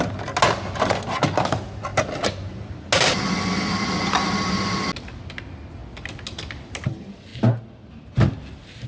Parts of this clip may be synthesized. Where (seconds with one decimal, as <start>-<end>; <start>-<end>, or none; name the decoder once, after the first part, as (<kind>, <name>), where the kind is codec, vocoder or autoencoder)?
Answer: none